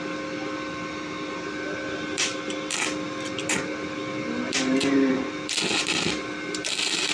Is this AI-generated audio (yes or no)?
yes